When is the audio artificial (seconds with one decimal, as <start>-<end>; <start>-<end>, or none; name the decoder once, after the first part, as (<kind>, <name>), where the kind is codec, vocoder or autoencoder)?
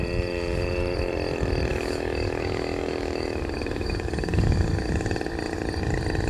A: 1.7-4.9 (codec, DAC)